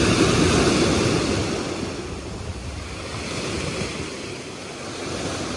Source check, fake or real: real